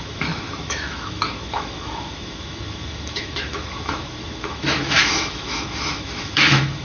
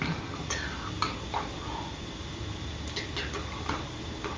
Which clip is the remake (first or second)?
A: first